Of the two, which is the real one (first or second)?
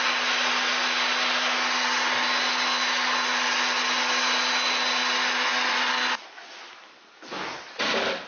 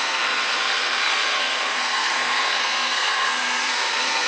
first